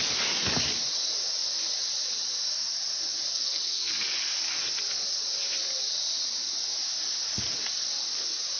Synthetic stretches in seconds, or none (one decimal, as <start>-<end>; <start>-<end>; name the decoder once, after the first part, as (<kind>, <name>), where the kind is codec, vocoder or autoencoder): 3.3-3.9 (codec, SNAC)